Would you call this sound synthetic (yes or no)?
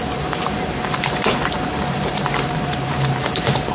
yes